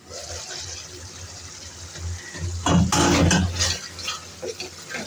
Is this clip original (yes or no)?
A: yes